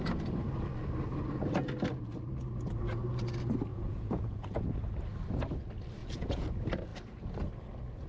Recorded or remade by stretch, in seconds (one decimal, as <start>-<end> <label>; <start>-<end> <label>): 0.0-3.7 recorded; 3.7-4.6 remade; 4.6-6.0 recorded; 6.0-6.5 remade; 6.5-8.1 recorded